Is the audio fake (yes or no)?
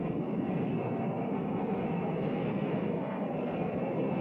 yes